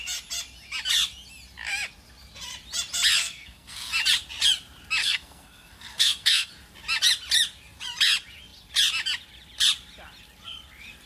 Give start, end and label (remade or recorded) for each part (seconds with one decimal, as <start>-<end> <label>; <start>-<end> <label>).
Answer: 0.0-3.2 recorded; 3.2-3.9 remade; 3.9-5.0 recorded; 5.0-6.5 remade; 6.5-11.1 recorded